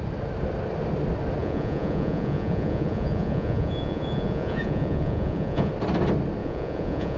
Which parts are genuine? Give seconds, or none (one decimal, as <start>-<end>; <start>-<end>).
0.0-1.4; 5.7-6.4